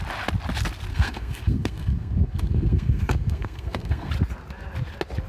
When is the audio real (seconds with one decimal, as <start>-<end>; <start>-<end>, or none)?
0.0-0.9; 4.1-5.3